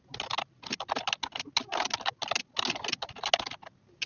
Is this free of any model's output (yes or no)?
yes